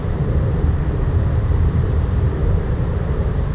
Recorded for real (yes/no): no